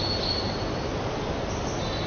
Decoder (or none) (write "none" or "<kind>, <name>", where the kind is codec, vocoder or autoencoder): none